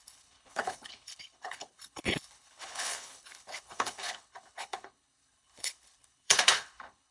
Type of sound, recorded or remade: remade